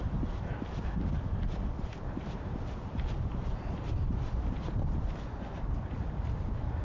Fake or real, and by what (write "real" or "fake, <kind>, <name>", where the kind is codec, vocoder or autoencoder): fake, vocoder, BigVGAN v2